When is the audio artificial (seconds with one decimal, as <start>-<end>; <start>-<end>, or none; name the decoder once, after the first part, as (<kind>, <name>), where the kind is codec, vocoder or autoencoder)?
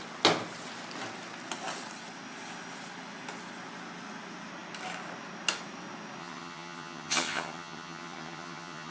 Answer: 6.2-8.9 (vocoder, HiFi-GAN)